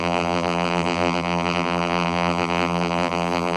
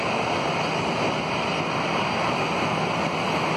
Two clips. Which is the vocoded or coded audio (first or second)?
first